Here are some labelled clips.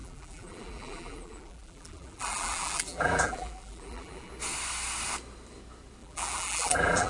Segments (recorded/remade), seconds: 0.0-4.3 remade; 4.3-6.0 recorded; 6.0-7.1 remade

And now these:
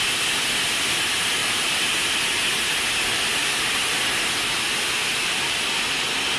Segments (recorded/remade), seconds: 0.0-1.4 recorded; 1.4-2.4 remade; 2.4-3.4 recorded; 3.4-4.0 remade; 4.0-5.2 recorded; 5.2-5.7 remade; 5.7-6.4 recorded

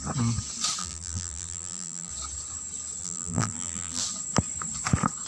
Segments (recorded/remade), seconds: 0.0-0.8 recorded; 0.8-2.1 remade; 2.1-3.0 recorded; 3.0-4.0 remade; 4.0-5.3 recorded